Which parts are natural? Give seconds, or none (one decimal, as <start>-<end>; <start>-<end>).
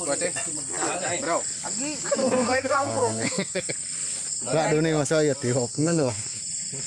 0.0-2.2; 3.7-5.7; 6.4-6.9